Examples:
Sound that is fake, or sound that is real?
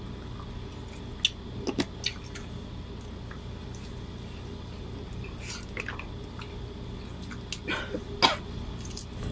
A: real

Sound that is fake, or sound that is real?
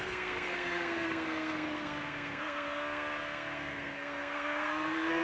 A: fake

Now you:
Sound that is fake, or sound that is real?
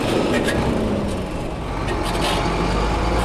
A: real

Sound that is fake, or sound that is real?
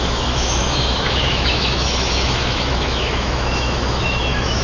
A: fake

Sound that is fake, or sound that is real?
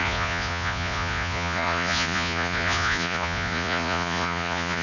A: fake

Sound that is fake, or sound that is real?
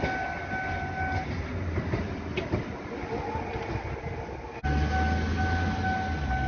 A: real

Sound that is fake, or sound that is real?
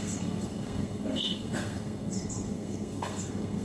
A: fake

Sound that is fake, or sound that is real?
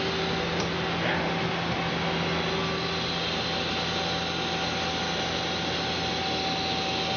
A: real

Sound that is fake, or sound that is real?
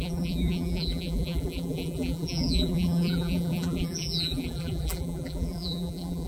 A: fake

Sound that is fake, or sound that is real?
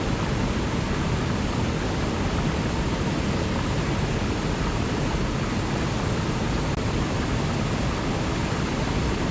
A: real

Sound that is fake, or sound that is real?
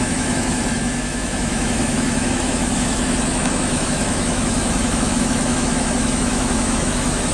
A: fake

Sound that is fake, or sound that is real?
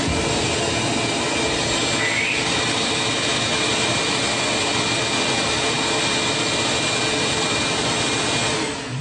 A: real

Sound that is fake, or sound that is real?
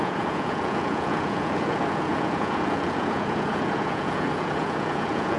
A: fake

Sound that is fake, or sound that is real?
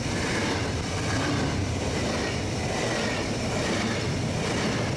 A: real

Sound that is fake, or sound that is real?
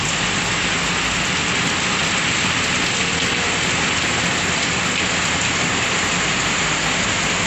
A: real